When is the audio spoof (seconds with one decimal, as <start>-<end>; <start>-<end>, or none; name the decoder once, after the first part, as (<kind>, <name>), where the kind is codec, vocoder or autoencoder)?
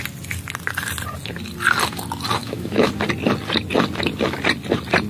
2.4-2.9 (autoencoder, DAC-VAE)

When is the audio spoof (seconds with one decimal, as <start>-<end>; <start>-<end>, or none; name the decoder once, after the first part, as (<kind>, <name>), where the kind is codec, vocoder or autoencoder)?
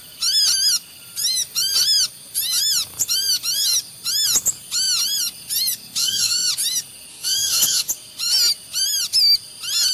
6.0-6.5 (autoencoder, DAC-VAE); 7.1-7.9